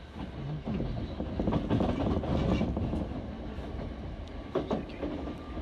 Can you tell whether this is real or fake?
real